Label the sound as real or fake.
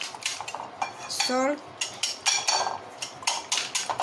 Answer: real